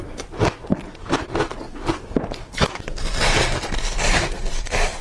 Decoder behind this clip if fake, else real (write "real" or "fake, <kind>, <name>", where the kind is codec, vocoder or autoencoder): real